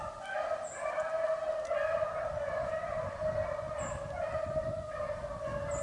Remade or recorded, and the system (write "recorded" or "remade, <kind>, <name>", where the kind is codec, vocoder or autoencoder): recorded